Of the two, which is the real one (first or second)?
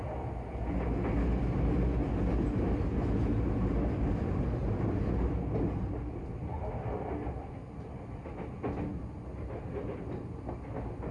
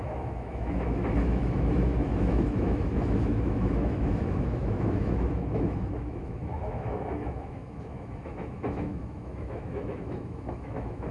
first